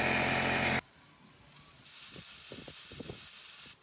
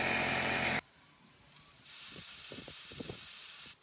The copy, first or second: second